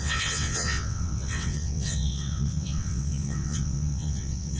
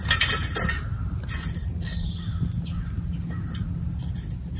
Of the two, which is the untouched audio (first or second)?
second